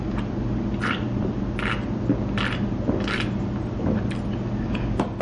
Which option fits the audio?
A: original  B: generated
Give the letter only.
A